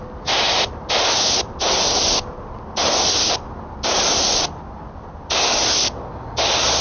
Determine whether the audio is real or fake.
real